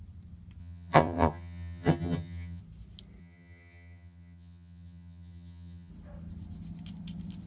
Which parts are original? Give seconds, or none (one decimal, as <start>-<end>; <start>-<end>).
0.0-0.6; 2.6-3.2; 5.9-7.5